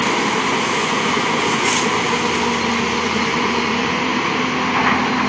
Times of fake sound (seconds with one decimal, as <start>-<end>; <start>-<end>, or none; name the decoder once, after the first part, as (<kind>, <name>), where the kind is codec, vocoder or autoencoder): 0.8-1.7 (vocoder, Vocos); 3.0-3.9